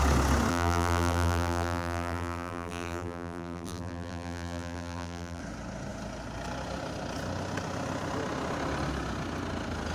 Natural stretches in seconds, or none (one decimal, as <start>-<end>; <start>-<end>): 0.0-0.5; 5.4-9.9